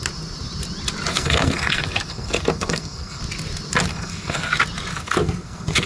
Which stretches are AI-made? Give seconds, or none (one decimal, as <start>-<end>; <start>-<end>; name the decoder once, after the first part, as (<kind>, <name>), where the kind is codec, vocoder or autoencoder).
1.1-3.2 (codec, SNAC); 3.9-4.5; 4.9-5.9